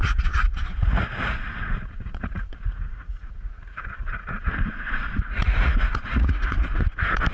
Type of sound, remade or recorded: remade